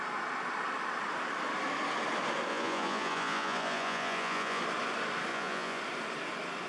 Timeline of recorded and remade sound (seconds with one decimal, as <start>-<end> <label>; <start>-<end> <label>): 0.0-2.5 recorded; 2.5-4.6 remade; 4.6-5.3 recorded; 5.3-5.8 remade; 5.8-6.7 recorded